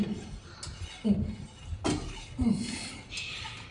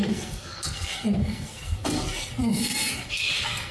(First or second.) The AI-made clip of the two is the second